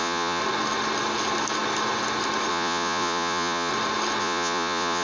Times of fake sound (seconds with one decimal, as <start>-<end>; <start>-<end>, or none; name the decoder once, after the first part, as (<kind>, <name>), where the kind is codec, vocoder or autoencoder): 0.0-0.4 (vocoder, Vocos); 2.5-3.7; 4.2-5.0